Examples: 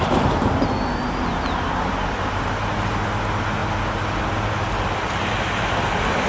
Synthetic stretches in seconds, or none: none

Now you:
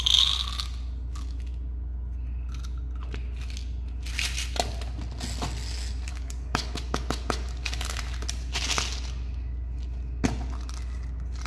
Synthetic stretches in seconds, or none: 6.1-8.0 (codec, DAC)

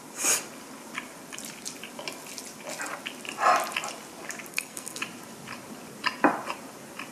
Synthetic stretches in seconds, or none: 4.5-5.0 (codec, SNAC)

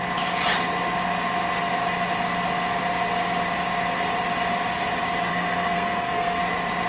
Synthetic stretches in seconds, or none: 5.3-6.4 (codec, SNAC)

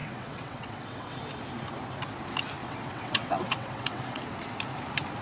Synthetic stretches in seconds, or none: 0.0-1.2 (vocoder, WaveNeXt); 2.6-4.2